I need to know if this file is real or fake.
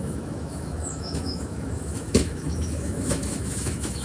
fake